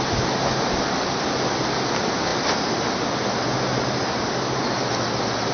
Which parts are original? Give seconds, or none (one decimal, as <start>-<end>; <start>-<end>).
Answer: 0.0-5.5